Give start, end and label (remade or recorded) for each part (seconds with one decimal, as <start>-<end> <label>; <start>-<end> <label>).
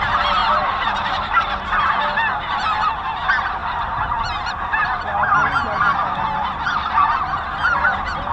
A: 0.0-0.4 recorded; 0.4-1.4 remade; 1.4-8.3 recorded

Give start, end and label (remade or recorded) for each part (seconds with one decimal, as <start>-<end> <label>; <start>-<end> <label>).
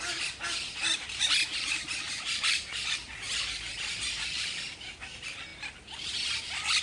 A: 0.0-1.5 recorded; 1.5-4.9 remade; 4.9-6.8 recorded